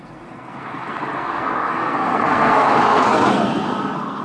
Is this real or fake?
fake